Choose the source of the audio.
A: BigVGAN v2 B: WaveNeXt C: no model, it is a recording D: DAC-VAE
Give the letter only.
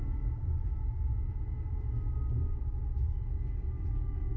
C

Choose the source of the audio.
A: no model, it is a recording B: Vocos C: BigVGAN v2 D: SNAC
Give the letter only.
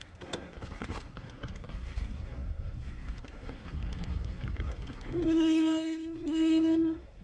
D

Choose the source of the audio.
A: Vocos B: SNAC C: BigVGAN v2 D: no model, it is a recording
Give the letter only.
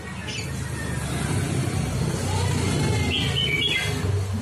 D